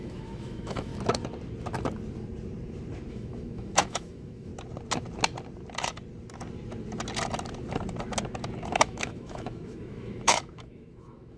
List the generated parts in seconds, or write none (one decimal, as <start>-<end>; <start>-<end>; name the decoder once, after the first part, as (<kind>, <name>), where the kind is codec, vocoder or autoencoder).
0.0-0.9 (autoencoder, DAC-VAE); 3.1-4.5; 8.7-11.4